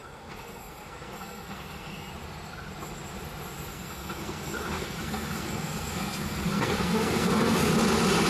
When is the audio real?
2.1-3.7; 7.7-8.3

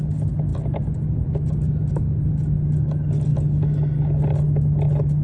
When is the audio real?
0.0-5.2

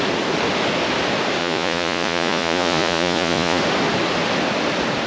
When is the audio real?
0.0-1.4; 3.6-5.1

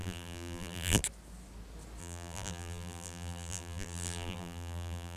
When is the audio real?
1.0-2.0

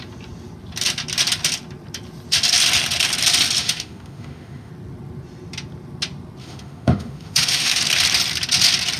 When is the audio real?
0.0-3.6; 4.7-6.4; 7.8-9.0

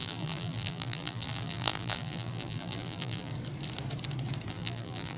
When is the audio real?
3.3-4.5

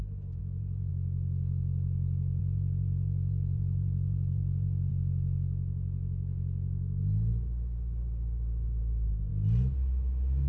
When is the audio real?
0.0-0.4; 0.9-2.4; 4.9-10.5

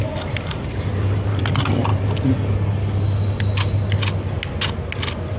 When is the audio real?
1.4-5.4